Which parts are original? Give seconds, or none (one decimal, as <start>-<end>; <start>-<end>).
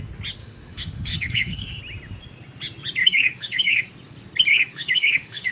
0.0-0.4; 1.8-3.0; 3.9-4.5